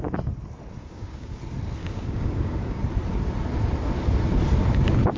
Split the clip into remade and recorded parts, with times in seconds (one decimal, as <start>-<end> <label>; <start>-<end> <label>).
0.0-0.8 recorded; 0.8-1.4 remade; 1.4-1.8 recorded; 1.8-2.8 remade; 2.8-5.2 recorded